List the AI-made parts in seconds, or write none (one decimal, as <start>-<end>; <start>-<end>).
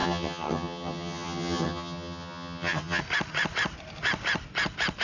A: 0.0-3.0